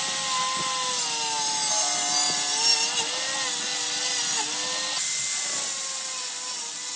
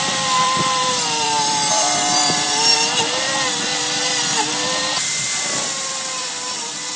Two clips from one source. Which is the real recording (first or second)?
first